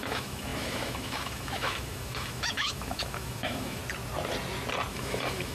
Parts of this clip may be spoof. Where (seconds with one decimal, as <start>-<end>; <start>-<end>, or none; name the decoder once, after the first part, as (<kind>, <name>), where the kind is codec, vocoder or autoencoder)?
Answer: 0.0-3.8 (autoencoder, DAC-VAE); 4.9-5.5